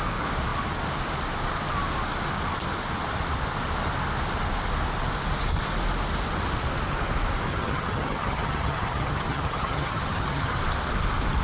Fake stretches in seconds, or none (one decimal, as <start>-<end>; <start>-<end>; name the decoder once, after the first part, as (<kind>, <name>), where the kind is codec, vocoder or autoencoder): 7.5-10.6 (vocoder, HiFi-GAN)